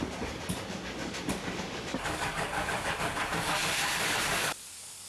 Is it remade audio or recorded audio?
remade